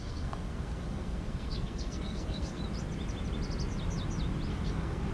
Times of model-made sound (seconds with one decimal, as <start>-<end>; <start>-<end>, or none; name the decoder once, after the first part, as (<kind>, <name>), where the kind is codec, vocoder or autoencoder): 0.0-2.6 (codec, SNAC); 4.5-5.1